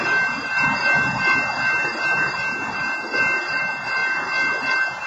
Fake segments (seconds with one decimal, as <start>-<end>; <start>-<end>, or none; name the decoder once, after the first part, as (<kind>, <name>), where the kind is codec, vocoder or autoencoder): none